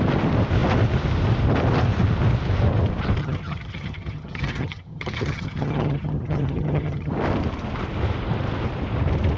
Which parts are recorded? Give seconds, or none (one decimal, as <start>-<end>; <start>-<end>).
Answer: 0.0-3.2; 7.1-9.4